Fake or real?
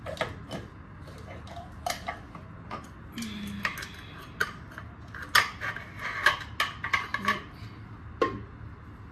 real